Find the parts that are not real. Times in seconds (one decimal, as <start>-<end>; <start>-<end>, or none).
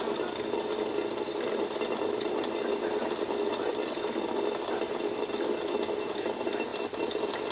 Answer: none